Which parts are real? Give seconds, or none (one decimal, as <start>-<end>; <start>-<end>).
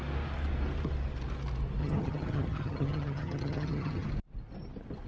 0.0-1.8; 4.1-5.1